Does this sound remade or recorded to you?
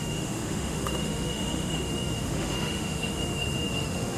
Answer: remade